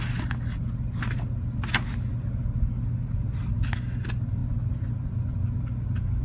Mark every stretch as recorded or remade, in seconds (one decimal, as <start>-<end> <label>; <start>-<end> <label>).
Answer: 0.0-6.2 recorded